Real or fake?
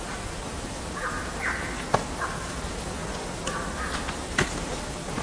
real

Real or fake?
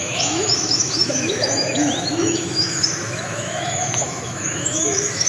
fake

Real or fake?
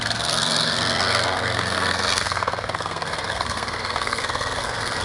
fake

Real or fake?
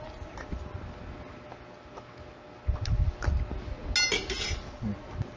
real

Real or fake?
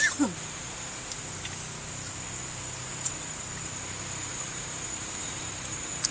real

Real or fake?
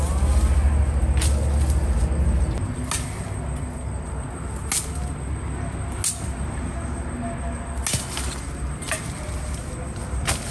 real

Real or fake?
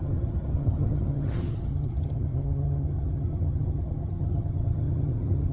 fake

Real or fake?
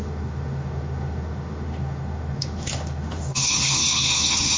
fake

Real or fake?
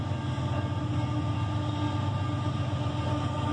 real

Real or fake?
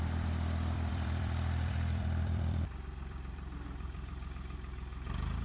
fake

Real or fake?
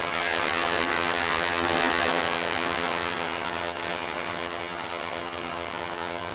fake